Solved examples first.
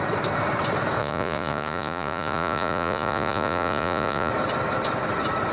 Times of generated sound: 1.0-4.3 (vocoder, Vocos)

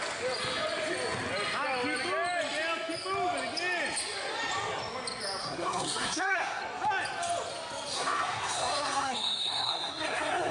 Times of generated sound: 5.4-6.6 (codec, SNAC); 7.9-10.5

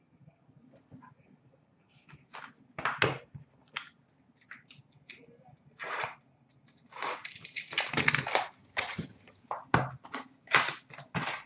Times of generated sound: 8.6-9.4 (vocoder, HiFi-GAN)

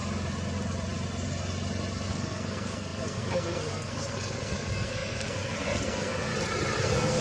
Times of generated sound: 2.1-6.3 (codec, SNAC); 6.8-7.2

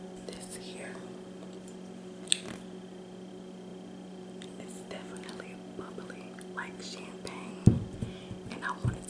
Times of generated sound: none

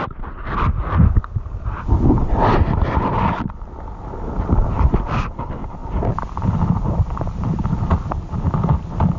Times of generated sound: 5.8-7.8 (vocoder, BigVGAN v2)

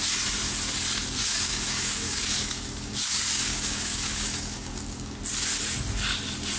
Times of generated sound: 1.2-5.2 (codec, DAC)

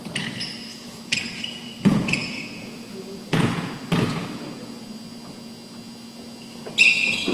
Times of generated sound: 0.7-3.8 (vocoder, Vocos)